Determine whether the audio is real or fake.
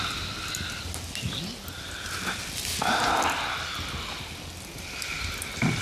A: real